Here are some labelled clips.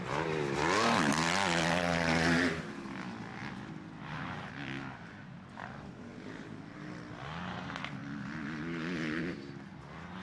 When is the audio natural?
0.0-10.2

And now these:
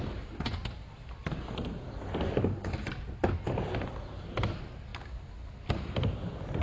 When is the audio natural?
0.6-4.4; 4.9-5.8